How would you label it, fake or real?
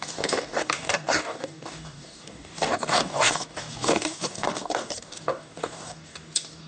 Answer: fake